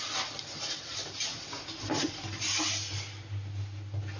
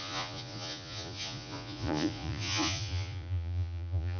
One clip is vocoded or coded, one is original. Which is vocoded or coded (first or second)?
second